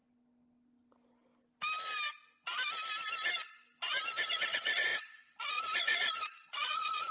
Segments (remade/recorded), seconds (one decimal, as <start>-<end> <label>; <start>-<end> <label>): 0.0-4.3 recorded; 4.3-7.1 remade